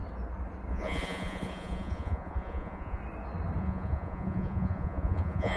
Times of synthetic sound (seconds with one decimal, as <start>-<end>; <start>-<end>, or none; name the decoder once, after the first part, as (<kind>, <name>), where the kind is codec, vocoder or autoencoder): 0.7-3.0 (vocoder, Vocos); 3.6-5.6